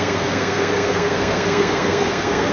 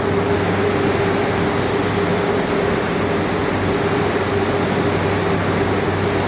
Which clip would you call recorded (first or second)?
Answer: second